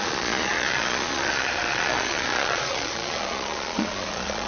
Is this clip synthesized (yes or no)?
yes